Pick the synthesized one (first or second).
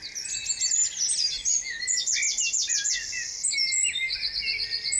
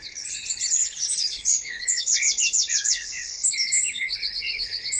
second